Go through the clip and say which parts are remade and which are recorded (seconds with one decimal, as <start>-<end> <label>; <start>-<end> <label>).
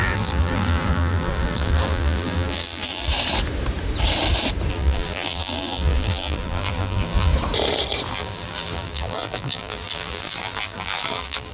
0.0-3.1 remade; 3.1-4.7 recorded; 4.7-7.3 remade; 7.3-8.1 recorded; 8.1-11.5 remade